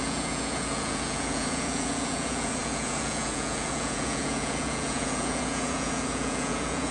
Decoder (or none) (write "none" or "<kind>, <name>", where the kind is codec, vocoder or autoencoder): vocoder, Vocos